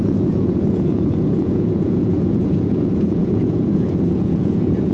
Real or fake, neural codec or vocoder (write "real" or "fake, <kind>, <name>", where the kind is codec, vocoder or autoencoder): fake, vocoder, Vocos